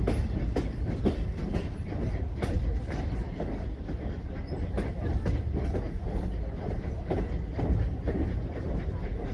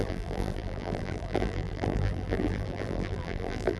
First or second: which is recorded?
first